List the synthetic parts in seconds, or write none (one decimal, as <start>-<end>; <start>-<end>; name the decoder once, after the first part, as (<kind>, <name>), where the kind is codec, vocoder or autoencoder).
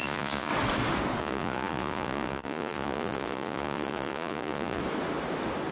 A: 0.0-0.5 (vocoder, Vocos); 1.2-4.8